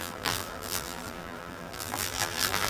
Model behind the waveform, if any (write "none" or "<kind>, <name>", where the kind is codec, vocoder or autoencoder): vocoder, BigVGAN v2